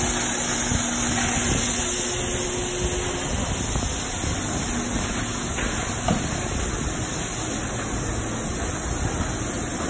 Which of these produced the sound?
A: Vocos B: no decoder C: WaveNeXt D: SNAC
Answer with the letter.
B